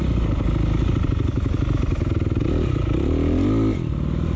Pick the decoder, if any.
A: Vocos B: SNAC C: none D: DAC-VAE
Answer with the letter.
C